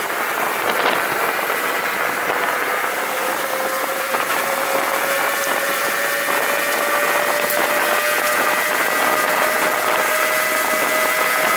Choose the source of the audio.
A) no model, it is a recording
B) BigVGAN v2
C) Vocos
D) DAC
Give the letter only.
A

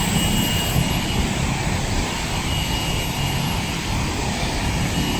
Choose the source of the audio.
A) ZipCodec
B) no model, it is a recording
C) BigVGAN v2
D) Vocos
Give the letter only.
B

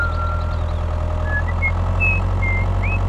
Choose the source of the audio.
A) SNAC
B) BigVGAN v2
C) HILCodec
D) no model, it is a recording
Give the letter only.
D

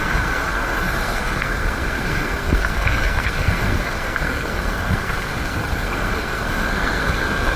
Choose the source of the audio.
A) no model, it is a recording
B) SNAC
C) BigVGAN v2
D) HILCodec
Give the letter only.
B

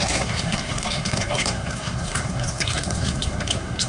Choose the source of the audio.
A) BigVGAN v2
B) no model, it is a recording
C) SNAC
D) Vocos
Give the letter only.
C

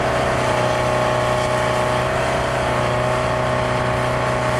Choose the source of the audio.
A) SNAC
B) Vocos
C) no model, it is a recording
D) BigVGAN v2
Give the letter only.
C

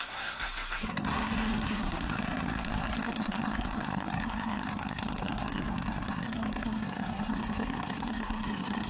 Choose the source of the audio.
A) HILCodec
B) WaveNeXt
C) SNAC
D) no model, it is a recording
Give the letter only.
C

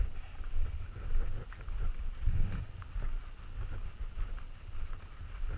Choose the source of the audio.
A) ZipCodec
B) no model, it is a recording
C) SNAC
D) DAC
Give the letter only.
B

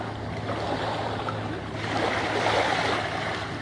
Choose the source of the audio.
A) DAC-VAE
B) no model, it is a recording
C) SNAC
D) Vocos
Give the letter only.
B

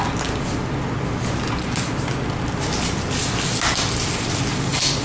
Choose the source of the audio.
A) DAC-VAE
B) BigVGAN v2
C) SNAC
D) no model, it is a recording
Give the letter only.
D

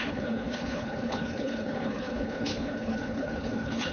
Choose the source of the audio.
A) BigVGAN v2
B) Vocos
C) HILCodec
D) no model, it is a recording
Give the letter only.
C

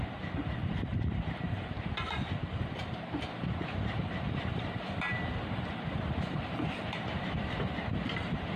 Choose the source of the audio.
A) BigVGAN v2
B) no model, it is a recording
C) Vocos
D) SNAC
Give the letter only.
A